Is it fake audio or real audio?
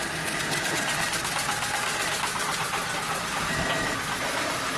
real